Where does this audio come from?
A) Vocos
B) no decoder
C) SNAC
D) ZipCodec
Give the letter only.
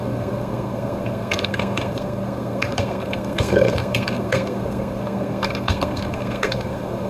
C